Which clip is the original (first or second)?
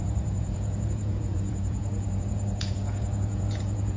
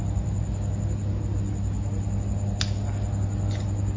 second